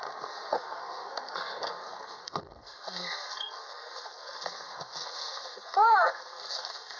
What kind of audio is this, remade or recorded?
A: remade